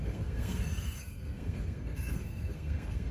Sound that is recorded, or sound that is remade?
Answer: remade